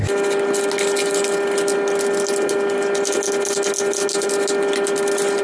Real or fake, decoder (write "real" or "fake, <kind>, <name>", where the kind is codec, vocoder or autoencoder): real